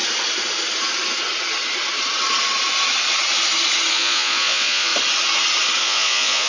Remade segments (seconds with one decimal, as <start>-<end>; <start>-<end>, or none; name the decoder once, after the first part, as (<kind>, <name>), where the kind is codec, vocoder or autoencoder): 3.9-4.9 (vocoder, Vocos); 5.8-6.5